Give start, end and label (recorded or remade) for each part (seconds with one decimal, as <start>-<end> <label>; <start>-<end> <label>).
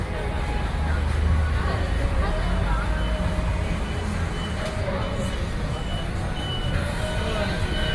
0.0-4.4 recorded; 4.4-5.2 remade; 5.2-7.9 recorded